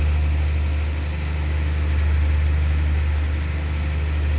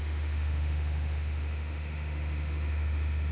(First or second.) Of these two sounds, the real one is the first